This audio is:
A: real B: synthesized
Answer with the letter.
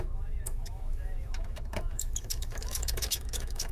B